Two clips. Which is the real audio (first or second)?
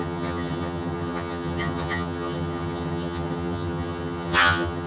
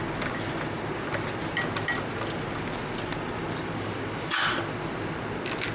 second